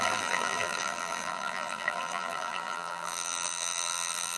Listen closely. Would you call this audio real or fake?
fake